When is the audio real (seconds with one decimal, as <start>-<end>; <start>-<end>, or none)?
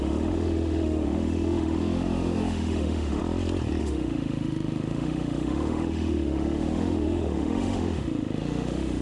3.2-3.8